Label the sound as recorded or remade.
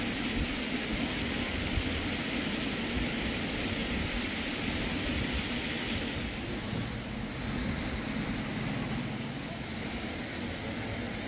recorded